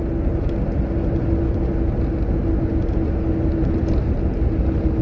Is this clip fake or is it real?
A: real